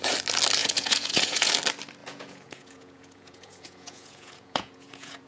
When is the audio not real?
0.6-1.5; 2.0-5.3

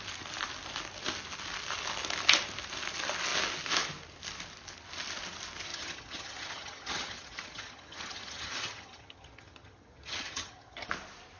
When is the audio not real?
5.7-10.9